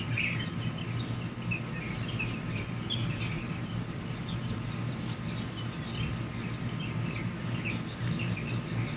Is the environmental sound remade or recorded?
recorded